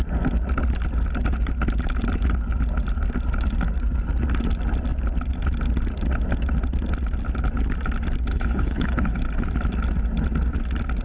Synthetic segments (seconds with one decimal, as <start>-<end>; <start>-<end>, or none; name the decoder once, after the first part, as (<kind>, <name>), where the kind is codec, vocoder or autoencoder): 8.3-9.2 (codec, HILCodec)